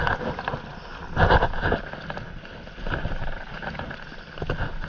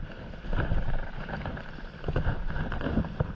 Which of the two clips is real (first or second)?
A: first